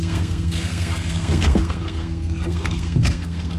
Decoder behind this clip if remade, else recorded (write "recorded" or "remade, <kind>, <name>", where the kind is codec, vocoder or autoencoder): remade, codec, SNAC